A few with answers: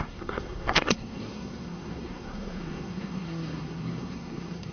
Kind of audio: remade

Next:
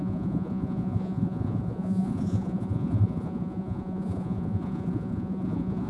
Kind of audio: remade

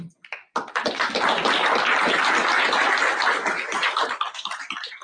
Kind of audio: recorded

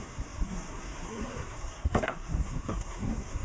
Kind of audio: remade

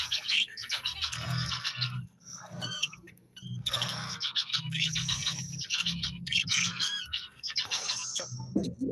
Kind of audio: remade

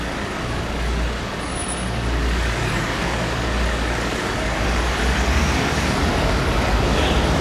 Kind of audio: remade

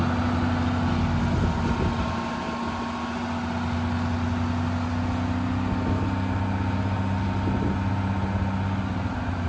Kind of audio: recorded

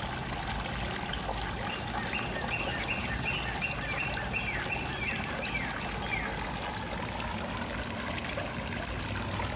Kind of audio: recorded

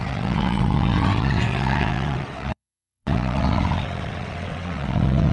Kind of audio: remade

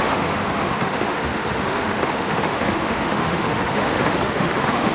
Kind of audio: remade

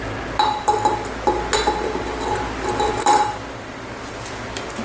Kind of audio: recorded